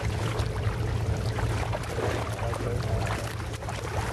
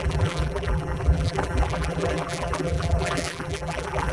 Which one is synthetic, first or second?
second